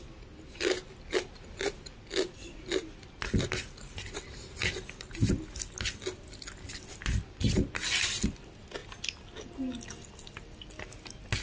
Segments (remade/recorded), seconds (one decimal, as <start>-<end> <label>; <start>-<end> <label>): 0.0-11.4 recorded